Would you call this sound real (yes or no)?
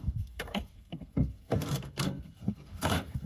no